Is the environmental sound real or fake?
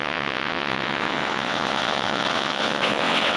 fake